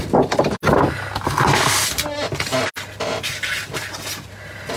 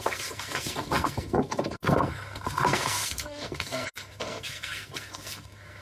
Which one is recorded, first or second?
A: first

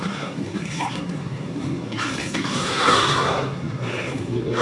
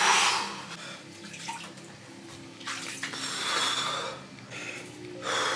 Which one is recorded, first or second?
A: second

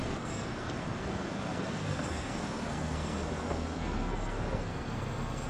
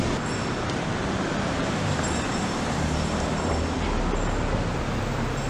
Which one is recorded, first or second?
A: second